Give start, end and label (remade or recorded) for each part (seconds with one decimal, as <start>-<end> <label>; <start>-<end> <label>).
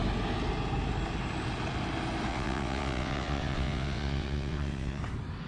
0.0-2.3 recorded; 2.3-5.0 remade; 5.0-5.5 recorded